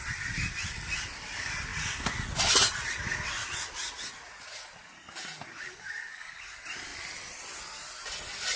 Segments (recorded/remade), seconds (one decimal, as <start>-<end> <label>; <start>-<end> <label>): 0.0-8.6 recorded